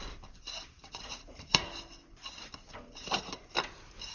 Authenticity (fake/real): real